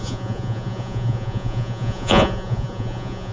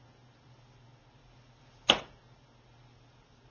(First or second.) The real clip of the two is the second